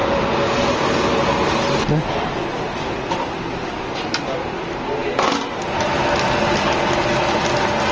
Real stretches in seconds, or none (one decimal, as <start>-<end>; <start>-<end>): 0.0-7.9